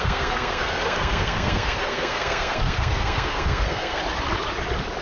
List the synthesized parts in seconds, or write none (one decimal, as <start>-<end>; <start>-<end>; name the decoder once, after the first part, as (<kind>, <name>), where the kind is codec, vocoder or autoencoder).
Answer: 0.0-4.0 (codec, SNAC)